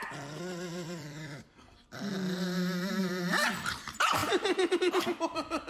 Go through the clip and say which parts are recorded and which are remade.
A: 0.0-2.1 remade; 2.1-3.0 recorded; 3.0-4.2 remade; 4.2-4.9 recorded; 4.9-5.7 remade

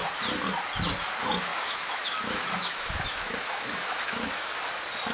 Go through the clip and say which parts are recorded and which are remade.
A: 0.0-1.5 recorded; 1.5-4.6 remade; 4.6-5.1 recorded

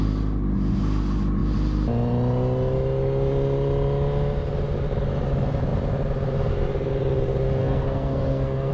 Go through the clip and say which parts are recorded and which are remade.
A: 0.0-7.6 recorded; 7.6-8.7 remade

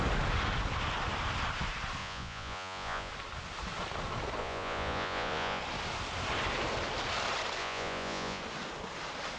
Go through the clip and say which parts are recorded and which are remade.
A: 0.0-2.0 recorded; 2.0-3.1 remade; 3.1-4.4 recorded; 4.4-5.6 remade; 5.6-7.6 recorded; 7.6-8.4 remade; 8.4-9.4 recorded

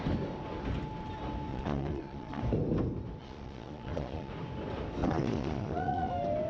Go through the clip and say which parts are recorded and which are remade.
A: 0.0-1.5 recorded; 1.5-2.4 remade; 2.4-3.2 recorded; 3.2-4.3 remade; 4.3-5.0 recorded; 5.0-6.1 remade; 6.1-6.5 recorded

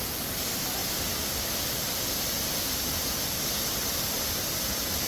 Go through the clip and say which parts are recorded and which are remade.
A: 0.0-5.1 recorded

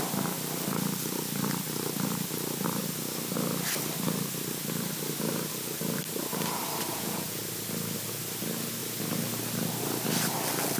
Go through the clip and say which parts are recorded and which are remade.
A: 0.0-6.9 recorded; 6.9-7.4 remade; 7.4-10.8 recorded

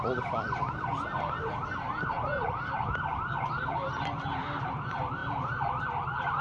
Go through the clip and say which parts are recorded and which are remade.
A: 0.0-6.4 recorded